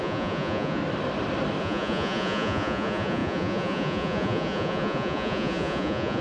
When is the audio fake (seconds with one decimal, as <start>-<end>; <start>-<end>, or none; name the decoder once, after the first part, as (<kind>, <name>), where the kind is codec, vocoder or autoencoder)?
0.0-0.8 (vocoder, Vocos); 1.6-6.2